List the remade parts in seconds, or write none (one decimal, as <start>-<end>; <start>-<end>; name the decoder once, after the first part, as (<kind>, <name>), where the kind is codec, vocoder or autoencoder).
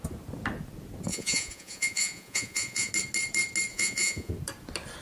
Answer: 1.1-2.9 (vocoder, Vocos); 3.7-4.3